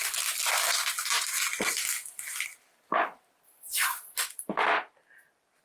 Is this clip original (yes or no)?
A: yes